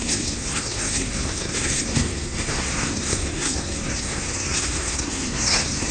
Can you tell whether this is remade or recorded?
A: remade